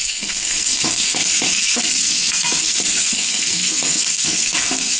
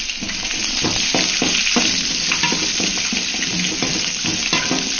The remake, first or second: first